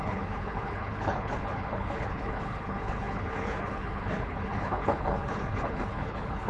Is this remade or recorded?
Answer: remade